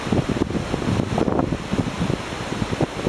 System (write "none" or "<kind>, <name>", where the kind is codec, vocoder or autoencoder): none